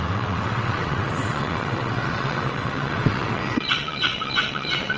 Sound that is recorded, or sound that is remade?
remade